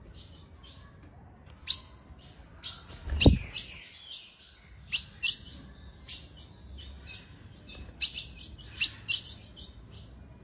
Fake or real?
real